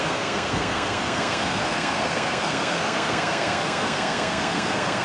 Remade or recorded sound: remade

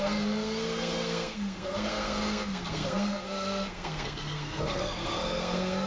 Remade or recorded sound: remade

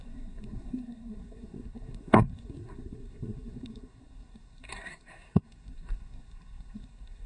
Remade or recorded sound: remade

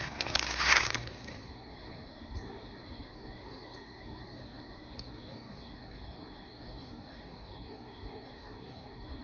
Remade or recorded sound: remade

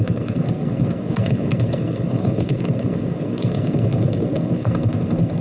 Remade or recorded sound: remade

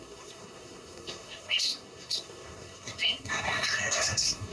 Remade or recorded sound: remade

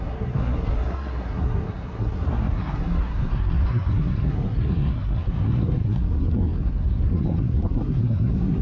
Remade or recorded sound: remade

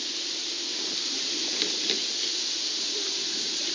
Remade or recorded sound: recorded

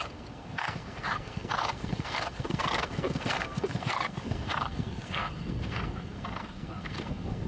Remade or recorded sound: remade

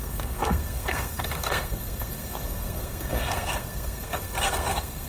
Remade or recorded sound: remade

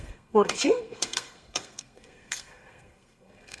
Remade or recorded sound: remade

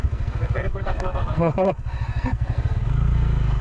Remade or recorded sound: remade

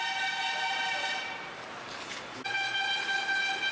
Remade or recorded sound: recorded